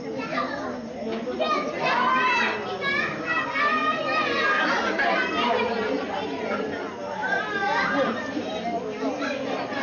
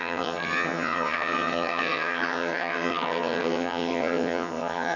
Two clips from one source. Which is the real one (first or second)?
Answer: first